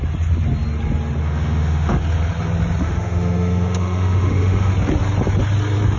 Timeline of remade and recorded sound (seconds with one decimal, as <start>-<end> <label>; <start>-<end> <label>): 0.0-1.2 recorded; 1.2-2.0 remade; 2.0-2.8 recorded; 2.8-4.7 remade; 4.7-6.0 recorded